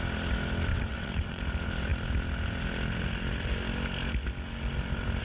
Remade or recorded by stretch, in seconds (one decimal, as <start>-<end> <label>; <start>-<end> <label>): 0.0-0.7 recorded; 0.7-1.4 remade; 1.4-5.2 recorded